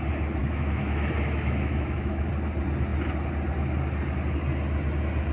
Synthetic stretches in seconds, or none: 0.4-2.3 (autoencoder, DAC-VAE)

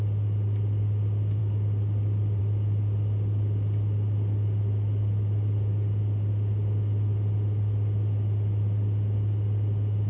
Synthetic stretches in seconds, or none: none

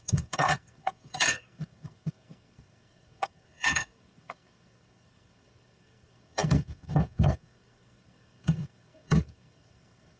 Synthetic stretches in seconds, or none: 0.0-10.2 (codec, SNAC)

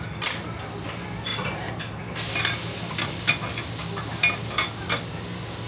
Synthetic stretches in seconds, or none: none

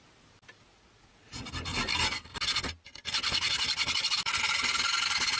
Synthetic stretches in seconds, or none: 0.7-1.5 (vocoder, Vocos)

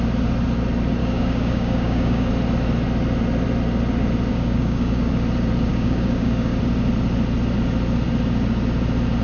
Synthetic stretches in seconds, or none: 1.0-2.3 (codec, DAC); 4.3-5.1; 5.7-6.6